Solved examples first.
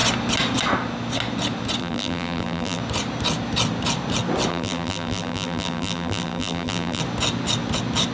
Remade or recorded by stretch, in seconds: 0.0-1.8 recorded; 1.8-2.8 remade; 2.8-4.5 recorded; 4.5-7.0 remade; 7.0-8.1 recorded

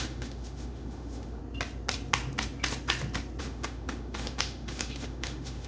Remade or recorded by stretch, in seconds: 0.0-1.4 remade; 1.4-3.4 recorded; 3.4-5.7 remade

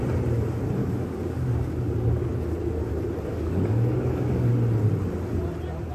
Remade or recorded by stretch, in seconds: 0.0-0.8 recorded; 0.8-2.3 remade; 2.3-3.3 recorded; 3.3-4.5 remade; 4.5-5.9 recorded

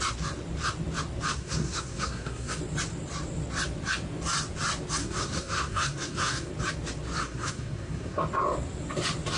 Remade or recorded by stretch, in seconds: 0.0-1.3 recorded; 1.3-2.6 remade; 2.6-5.0 recorded; 5.0-6.5 remade; 6.5-7.2 recorded; 7.2-8.2 remade; 8.2-9.4 recorded